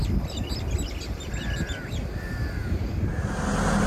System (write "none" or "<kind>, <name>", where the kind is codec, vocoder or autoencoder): none